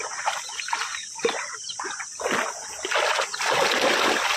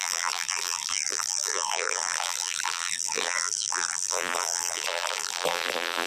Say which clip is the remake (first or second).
second